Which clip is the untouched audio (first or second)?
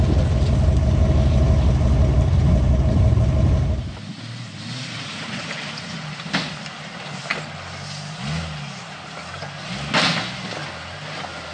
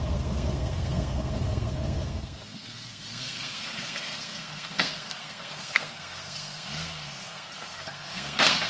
first